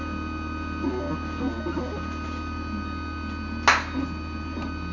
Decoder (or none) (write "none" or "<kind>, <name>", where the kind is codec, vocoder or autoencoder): none